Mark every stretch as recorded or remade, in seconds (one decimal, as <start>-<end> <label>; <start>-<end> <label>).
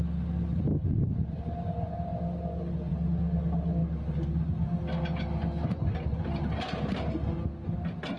0.0-8.2 recorded